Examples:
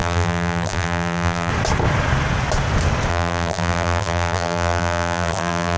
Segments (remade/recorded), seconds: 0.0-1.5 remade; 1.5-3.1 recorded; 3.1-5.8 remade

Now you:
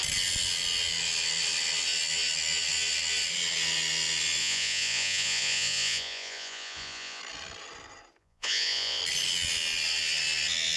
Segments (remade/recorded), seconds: 0.0-4.4 recorded; 4.4-7.2 remade; 7.2-8.2 recorded; 8.2-9.0 remade; 9.0-10.8 recorded

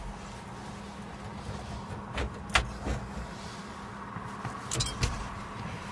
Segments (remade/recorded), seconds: 0.0-5.9 recorded